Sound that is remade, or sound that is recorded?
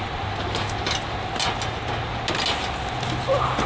recorded